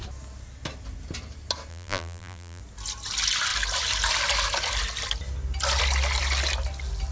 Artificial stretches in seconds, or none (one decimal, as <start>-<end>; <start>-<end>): 1.7-2.6